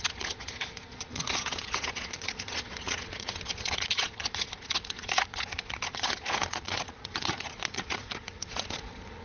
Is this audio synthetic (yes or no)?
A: yes